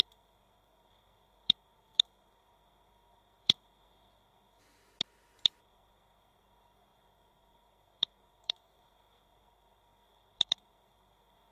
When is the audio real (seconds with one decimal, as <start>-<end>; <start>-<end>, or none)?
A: 4.6-5.6